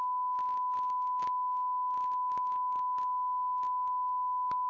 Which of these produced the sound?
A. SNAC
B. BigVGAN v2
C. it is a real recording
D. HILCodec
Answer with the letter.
C